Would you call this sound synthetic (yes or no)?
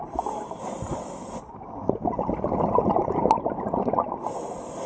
no